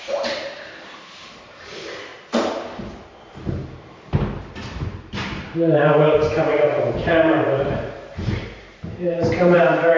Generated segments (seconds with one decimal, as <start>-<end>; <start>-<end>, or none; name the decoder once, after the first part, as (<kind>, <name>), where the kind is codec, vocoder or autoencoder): 0.0-2.1 (vocoder, BigVGAN v2); 3.2-10.0